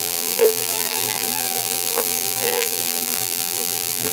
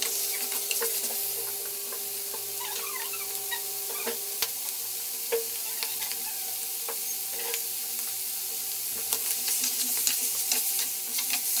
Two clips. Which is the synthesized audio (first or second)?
first